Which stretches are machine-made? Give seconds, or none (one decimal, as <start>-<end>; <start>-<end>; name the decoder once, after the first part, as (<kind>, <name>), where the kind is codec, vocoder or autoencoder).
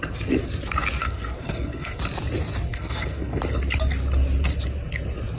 1.0-2.0 (codec, SNAC); 2.7-3.4